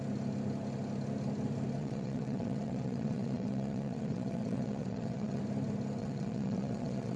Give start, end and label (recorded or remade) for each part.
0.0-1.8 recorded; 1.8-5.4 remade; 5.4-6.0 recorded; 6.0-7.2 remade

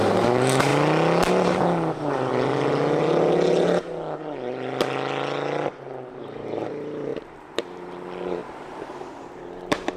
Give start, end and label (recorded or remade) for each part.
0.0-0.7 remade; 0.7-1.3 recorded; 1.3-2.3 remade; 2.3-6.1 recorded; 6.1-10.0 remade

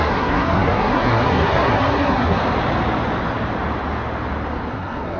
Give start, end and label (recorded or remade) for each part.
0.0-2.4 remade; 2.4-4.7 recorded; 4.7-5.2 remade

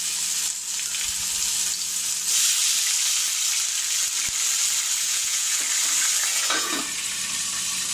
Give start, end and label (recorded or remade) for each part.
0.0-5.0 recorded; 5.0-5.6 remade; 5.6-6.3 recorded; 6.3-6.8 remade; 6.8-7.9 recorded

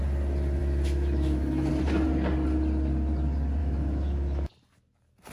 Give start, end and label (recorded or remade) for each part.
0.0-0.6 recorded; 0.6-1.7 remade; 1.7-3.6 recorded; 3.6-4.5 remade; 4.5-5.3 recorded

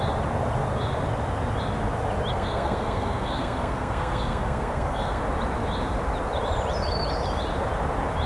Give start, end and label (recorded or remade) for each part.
0.0-2.3 recorded; 2.3-5.2 remade; 5.2-8.3 recorded

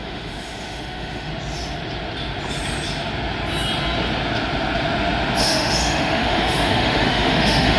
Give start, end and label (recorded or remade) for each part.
0.0-1.3 remade; 1.3-5.4 recorded; 5.4-7.8 remade

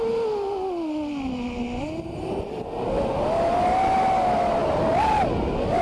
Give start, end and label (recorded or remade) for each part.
0.0-5.8 recorded